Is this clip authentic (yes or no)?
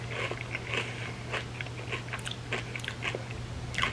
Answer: yes